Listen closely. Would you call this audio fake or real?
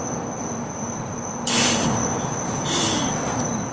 real